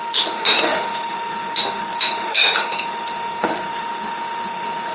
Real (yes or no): no